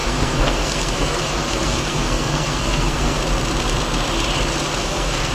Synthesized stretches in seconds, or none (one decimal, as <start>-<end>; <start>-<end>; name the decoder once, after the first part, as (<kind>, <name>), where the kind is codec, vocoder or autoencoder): 0.0-3.2 (codec, SNAC); 4.8-5.3